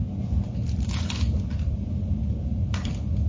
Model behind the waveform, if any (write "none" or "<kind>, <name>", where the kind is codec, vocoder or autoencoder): none